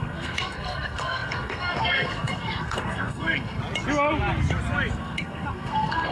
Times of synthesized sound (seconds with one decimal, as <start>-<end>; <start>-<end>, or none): 0.0-3.6; 4.9-6.1